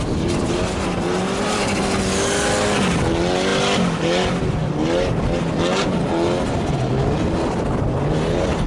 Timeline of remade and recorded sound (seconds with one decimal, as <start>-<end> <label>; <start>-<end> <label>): 0.0-8.7 recorded